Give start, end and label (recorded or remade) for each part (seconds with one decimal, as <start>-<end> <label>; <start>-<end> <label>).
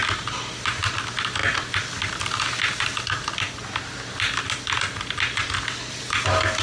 0.0-6.6 recorded